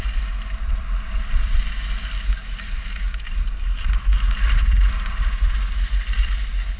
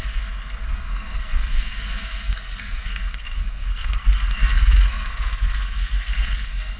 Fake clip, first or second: second